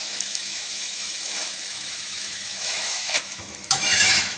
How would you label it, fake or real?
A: fake